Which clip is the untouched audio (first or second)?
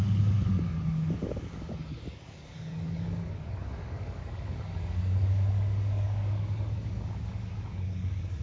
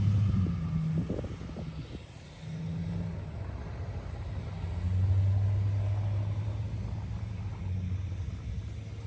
second